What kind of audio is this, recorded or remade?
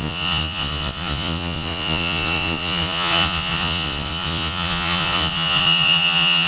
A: remade